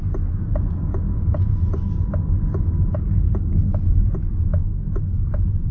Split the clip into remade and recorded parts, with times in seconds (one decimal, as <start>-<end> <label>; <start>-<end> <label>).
0.0-5.7 recorded